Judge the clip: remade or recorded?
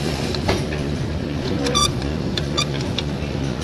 remade